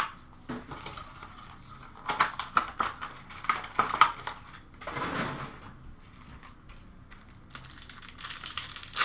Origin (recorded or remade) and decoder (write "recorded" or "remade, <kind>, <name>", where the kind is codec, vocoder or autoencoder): recorded